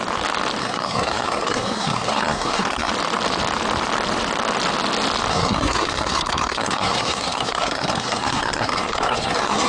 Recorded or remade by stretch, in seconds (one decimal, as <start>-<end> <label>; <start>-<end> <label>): 0.0-0.6 recorded; 0.6-2.9 remade; 2.9-5.3 recorded; 5.3-9.7 remade